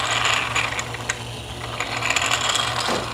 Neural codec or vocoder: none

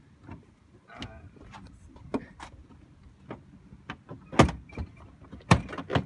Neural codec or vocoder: none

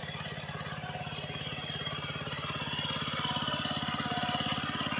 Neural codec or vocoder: none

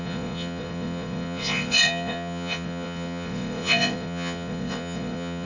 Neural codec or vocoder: vocoder, Vocos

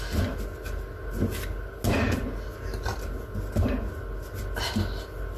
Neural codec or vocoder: none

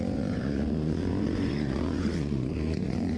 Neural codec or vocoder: vocoder, Vocos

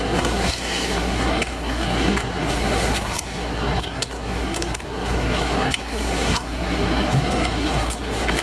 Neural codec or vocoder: codec, SNAC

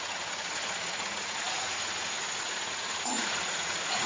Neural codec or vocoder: vocoder, Vocos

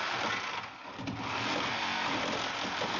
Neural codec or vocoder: none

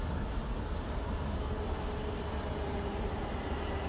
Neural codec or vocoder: none